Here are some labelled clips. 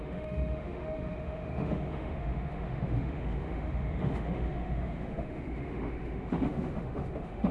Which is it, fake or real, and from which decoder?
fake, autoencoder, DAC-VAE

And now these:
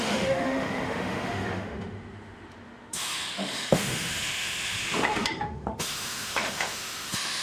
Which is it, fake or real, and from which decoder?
fake, autoencoder, DAC-VAE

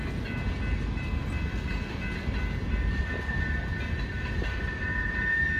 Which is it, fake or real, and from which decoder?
real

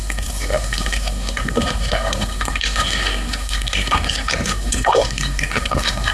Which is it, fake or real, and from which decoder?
fake, codec, SNAC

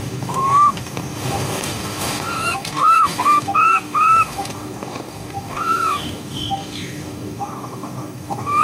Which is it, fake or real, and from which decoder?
fake, codec, DAC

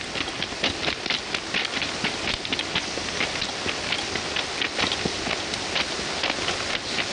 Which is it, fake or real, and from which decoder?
real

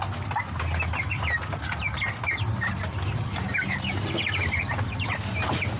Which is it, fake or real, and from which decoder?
real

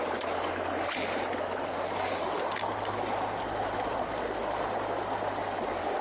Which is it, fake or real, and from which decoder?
real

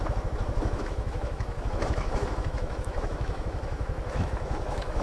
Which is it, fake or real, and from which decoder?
fake, autoencoder, DAC-VAE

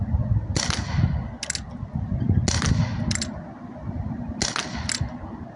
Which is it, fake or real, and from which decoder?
real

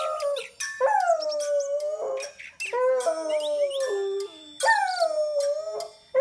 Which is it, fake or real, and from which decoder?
real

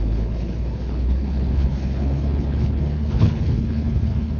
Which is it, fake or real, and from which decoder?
fake, codec, HILCodec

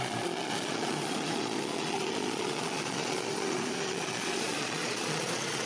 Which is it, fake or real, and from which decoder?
fake, vocoder, Vocos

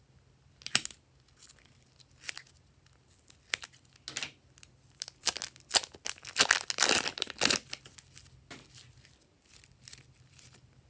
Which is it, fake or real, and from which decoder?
real